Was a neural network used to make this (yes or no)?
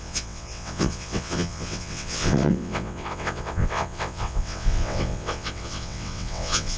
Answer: yes